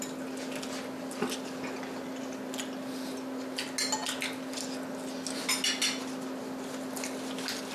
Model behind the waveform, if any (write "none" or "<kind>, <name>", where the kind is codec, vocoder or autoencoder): none